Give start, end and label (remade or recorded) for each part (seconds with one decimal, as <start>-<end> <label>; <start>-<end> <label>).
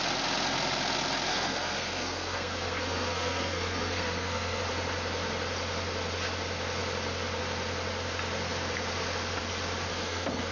0.0-1.3 recorded; 1.3-4.6 remade; 4.6-9.9 recorded; 9.9-10.5 remade